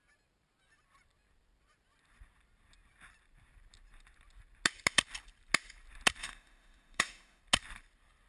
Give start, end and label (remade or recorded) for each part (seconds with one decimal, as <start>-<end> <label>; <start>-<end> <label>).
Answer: 0.0-6.2 recorded; 6.2-7.4 remade; 7.4-8.3 recorded